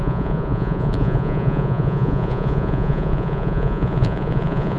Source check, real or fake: fake